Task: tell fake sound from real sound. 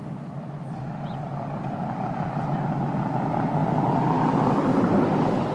fake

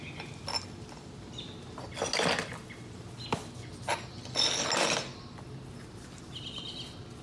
real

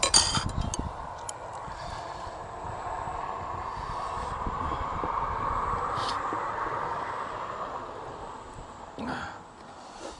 real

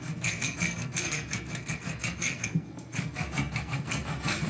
fake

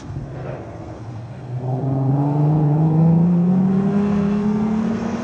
fake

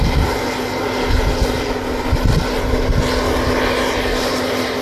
real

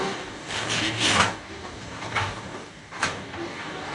fake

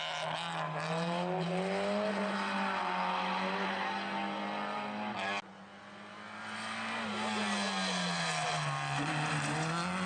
real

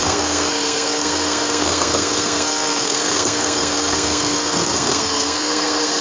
fake